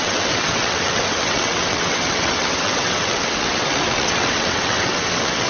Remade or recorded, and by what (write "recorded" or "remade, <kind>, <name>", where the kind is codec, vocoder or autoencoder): remade, vocoder, WaveNeXt